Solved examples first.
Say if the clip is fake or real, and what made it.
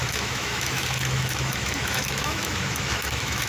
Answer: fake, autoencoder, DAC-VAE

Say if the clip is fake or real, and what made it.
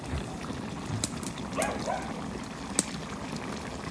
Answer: real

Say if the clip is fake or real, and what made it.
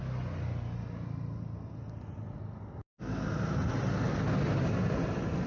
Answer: real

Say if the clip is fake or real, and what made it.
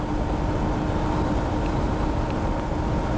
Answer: real